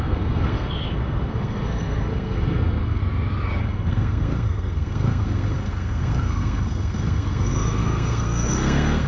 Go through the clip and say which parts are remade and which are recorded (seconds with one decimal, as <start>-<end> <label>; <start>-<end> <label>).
0.0-3.0 remade; 3.0-3.6 recorded; 3.6-9.1 remade

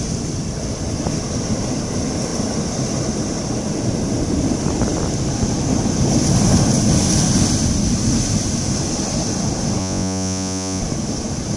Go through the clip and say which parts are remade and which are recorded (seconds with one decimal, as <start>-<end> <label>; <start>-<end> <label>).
0.0-9.8 recorded; 9.8-10.8 remade; 10.8-11.6 recorded

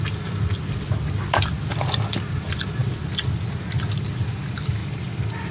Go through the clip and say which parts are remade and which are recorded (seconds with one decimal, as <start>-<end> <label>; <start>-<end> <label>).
0.0-5.5 recorded